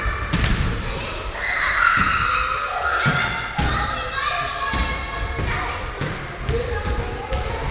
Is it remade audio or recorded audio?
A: recorded